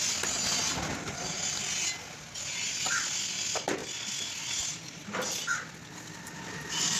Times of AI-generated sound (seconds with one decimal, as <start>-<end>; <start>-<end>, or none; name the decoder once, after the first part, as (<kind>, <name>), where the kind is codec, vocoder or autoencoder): none